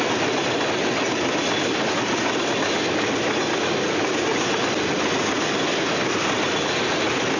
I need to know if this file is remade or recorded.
recorded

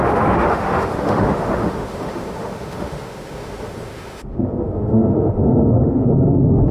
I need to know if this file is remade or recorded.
remade